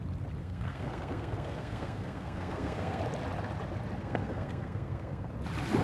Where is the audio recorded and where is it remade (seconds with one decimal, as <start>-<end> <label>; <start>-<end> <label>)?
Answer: 0.0-0.4 recorded; 0.4-3.0 remade; 3.0-4.0 recorded; 4.0-5.3 remade; 5.3-5.8 recorded